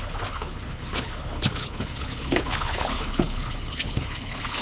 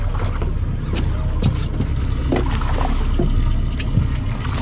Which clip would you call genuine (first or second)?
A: second